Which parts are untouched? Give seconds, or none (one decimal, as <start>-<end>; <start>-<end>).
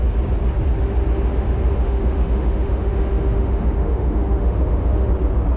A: 0.0-1.7; 5.1-5.6